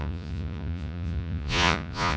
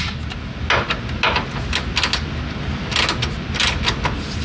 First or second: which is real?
second